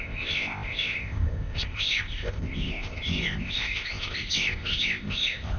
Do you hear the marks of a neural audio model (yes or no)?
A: yes